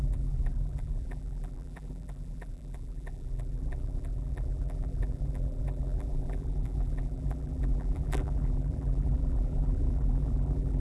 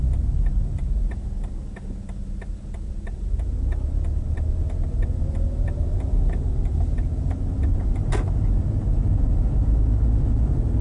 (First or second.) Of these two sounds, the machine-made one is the first